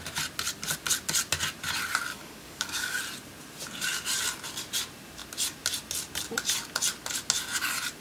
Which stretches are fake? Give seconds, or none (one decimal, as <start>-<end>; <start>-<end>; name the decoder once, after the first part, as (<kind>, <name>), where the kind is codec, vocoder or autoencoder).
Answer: 2.1-3.0 (codec, DAC)